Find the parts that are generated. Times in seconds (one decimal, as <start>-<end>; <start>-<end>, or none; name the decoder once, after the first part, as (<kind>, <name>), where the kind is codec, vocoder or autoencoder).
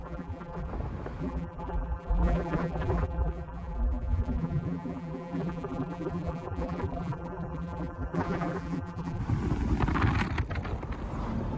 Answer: 0.0-0.7 (vocoder, BigVGAN v2); 1.2-9.2